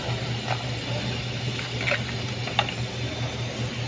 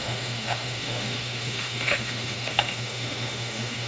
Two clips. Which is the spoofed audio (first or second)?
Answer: second